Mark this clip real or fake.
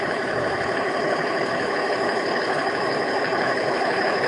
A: fake